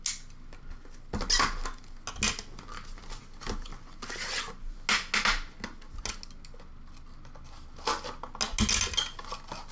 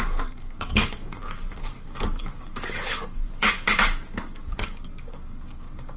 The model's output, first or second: second